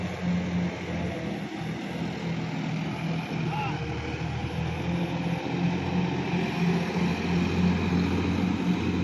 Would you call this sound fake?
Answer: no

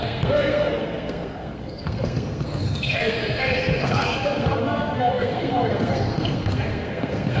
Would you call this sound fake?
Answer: yes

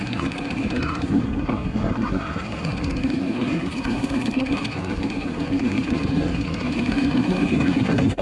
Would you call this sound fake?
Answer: yes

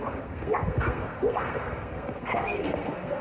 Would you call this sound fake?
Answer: yes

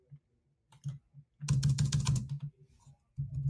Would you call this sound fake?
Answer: no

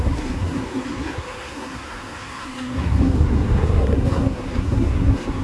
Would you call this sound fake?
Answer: yes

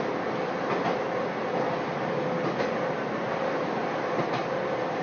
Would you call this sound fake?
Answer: no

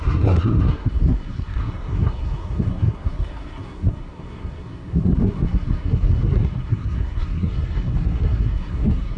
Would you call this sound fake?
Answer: yes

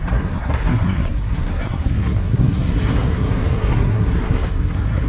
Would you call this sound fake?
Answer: yes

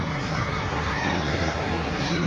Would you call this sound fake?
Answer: yes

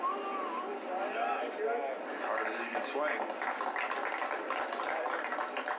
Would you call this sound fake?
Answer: no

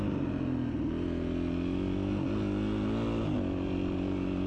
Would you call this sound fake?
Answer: no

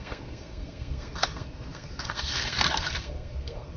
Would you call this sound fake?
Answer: yes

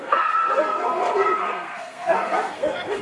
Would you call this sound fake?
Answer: yes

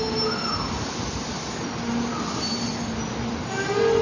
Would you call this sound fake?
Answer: no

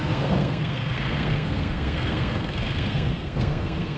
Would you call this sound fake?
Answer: yes